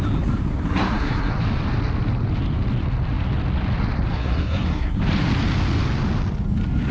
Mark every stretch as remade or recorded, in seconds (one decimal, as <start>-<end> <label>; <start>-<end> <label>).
0.0-0.7 recorded; 0.7-1.3 remade; 1.3-4.1 recorded; 4.1-5.0 remade; 5.0-6.9 recorded